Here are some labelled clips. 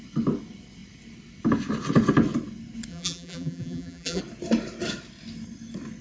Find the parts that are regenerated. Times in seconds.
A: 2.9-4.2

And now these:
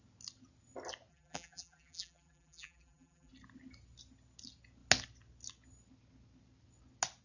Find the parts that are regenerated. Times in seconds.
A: 1.1-3.3

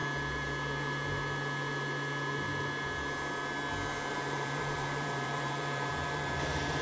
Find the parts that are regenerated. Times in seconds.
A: 4.1-6.8

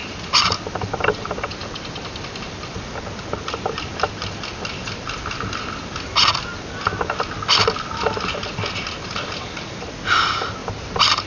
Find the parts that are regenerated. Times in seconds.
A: 10.6-11.3

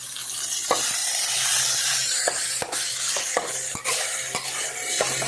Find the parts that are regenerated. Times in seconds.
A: 1.0-2.2

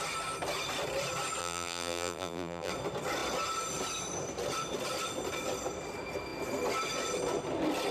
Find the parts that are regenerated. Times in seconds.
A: 1.4-2.7

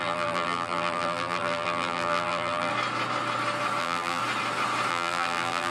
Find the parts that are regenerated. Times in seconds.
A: 0.0-2.7; 3.8-4.2; 4.9-5.7

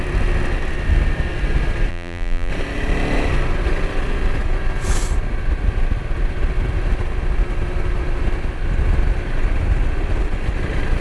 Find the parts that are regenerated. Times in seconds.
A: 1.9-2.5